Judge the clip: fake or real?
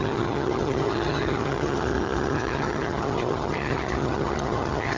fake